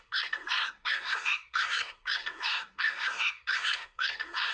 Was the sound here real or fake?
fake